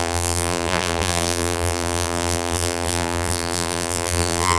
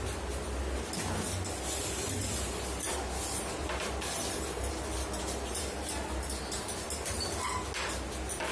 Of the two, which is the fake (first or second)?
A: first